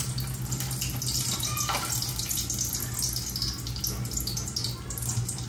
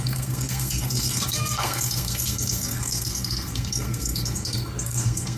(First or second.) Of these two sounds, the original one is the first